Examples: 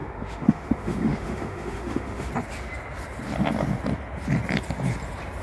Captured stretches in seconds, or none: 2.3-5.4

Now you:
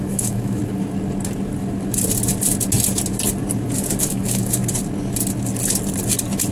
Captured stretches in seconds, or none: 0.6-4.0; 4.6-6.5

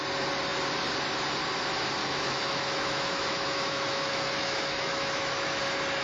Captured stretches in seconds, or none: 0.0-2.0; 5.6-6.0

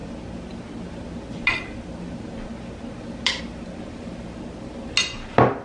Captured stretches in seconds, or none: 0.0-5.6

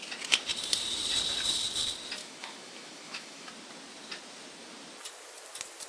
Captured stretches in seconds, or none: 0.0-2.2; 3.5-5.9

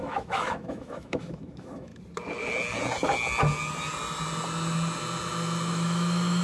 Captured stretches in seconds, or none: 1.9-5.7

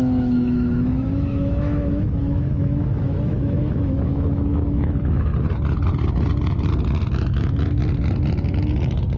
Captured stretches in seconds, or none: 5.3-7.1; 7.8-9.2

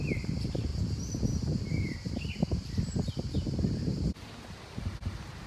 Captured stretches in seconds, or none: 0.0-5.5